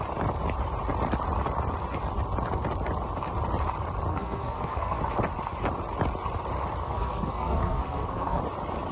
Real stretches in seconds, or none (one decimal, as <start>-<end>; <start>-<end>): 0.0-4.1; 5.0-6.8; 8.4-8.9